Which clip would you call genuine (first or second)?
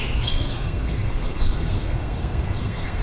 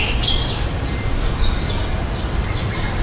second